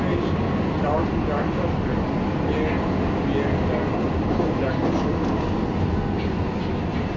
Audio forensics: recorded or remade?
recorded